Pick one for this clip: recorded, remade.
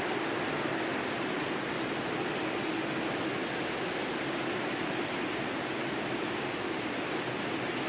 recorded